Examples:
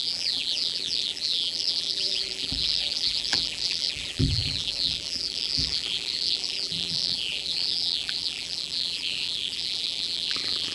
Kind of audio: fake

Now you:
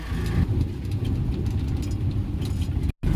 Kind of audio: real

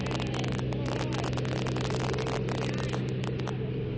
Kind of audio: real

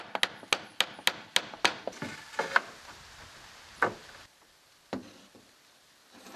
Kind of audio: real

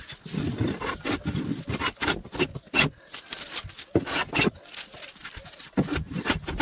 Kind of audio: real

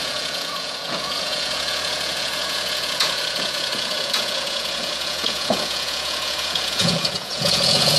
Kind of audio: fake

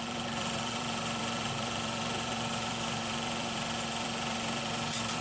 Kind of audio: fake